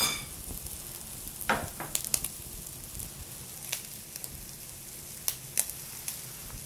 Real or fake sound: real